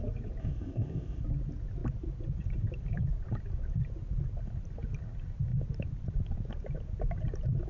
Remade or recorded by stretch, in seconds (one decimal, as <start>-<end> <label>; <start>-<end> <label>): 0.0-0.4 recorded; 0.4-1.2 remade; 1.2-7.7 recorded